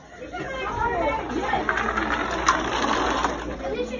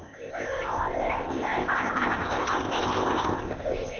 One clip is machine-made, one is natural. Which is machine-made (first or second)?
second